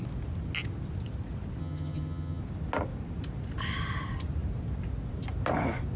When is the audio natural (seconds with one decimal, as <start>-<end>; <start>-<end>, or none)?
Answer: 0.0-1.6; 2.4-6.0